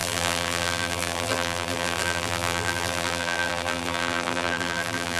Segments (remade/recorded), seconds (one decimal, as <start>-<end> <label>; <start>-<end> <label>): 0.0-5.2 remade

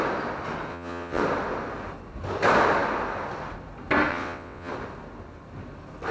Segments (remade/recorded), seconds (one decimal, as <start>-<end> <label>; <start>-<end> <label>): 0.0-0.7 recorded; 0.7-1.2 remade; 1.2-4.1 recorded; 4.1-4.7 remade; 4.7-6.1 recorded